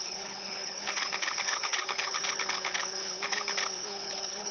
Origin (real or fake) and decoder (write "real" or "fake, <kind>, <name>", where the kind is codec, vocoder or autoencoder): fake, codec, HILCodec